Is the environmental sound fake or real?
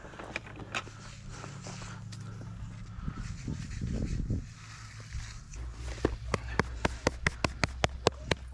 real